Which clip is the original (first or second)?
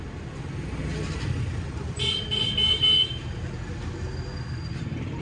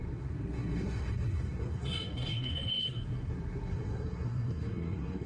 first